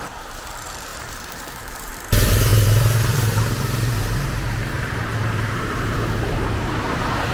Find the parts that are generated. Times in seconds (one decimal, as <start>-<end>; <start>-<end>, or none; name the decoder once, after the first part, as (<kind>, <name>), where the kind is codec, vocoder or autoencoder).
0.0-7.3 (vocoder, BigVGAN v2)